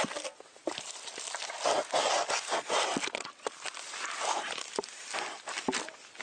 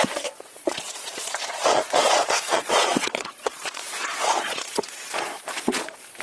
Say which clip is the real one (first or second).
first